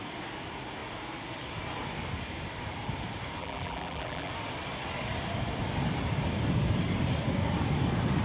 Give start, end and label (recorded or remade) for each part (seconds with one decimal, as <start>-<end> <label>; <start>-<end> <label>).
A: 0.0-3.4 recorded; 3.4-4.3 remade; 4.3-8.2 recorded